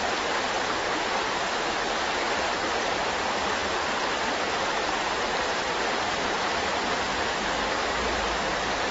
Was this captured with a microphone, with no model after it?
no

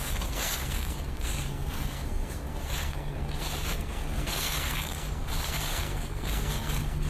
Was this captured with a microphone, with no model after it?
no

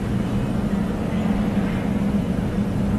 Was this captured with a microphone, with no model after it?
yes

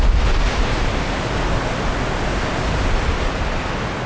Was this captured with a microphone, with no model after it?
yes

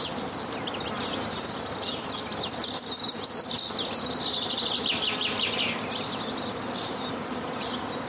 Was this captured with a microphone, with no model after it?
yes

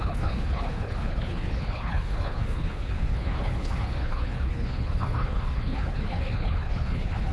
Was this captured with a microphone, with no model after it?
no